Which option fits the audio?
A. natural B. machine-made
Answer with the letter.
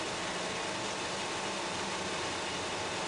A